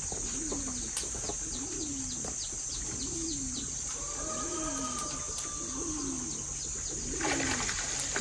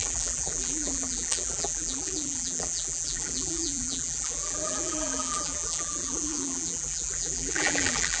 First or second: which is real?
first